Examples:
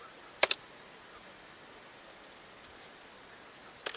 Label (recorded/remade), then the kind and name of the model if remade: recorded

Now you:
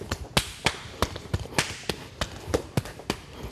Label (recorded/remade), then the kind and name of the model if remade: recorded